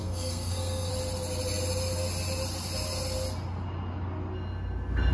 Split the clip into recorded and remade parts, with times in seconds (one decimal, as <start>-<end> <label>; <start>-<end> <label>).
0.0-0.9 remade; 0.9-5.1 recorded